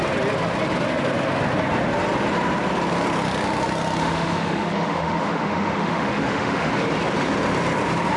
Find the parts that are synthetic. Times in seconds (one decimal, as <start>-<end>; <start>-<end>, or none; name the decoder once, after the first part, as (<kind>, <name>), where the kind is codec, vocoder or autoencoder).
4.0-6.7 (autoencoder, DAC-VAE)